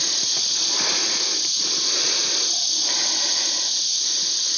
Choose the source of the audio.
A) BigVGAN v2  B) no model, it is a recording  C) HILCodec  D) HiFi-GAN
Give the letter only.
B